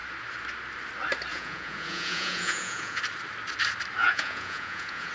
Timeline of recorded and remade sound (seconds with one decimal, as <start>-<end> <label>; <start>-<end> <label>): 0.0-1.3 recorded; 1.3-3.0 remade; 3.0-4.0 recorded; 4.0-5.1 remade